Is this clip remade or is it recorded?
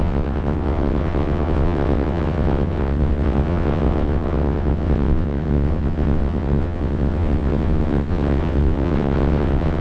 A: remade